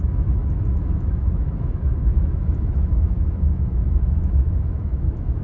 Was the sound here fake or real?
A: fake